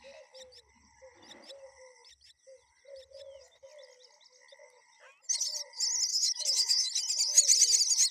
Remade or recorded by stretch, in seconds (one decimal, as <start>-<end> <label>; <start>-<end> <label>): 0.0-6.1 recorded; 6.1-6.9 remade; 6.9-8.1 recorded